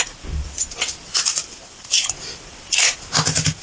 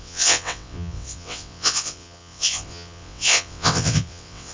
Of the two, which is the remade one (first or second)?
second